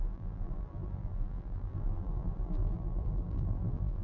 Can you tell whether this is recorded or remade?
remade